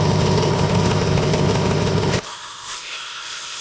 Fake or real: fake